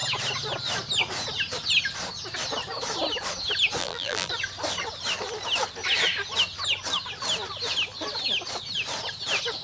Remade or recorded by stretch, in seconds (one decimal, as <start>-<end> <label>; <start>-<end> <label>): 0.0-3.8 recorded; 3.8-4.3 remade; 4.3-9.6 recorded